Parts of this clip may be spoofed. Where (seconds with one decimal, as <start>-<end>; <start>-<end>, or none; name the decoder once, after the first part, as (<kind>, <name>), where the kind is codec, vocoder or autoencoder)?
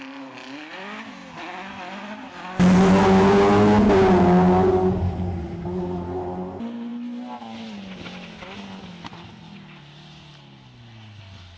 none